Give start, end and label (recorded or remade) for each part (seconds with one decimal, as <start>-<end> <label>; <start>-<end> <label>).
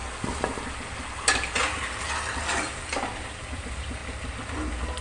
0.0-2.5 recorded; 2.5-4.0 remade; 4.0-5.0 recorded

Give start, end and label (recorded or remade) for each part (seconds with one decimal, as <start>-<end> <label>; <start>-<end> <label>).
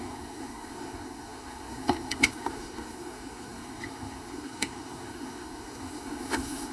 0.0-6.7 remade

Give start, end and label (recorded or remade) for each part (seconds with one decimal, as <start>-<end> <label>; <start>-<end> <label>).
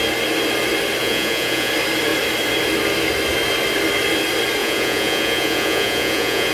0.0-1.0 recorded; 1.0-1.7 remade; 1.7-4.6 recorded; 4.6-6.5 remade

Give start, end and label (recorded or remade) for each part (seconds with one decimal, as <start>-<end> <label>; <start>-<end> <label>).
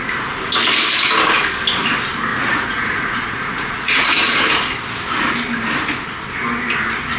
0.0-2.3 recorded; 2.3-4.4 remade; 4.4-7.2 recorded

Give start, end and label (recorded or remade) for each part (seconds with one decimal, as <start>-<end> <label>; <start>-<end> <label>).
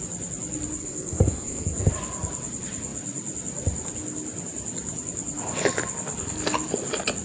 0.0-0.8 recorded; 0.8-1.9 remade; 1.9-7.2 recorded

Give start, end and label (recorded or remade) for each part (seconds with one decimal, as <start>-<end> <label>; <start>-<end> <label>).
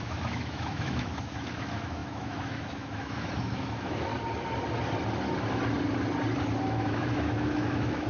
0.0-4.1 remade; 4.1-6.6 recorded; 6.6-8.1 remade